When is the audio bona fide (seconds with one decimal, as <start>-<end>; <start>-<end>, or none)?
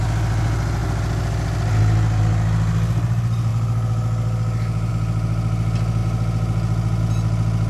0.0-7.7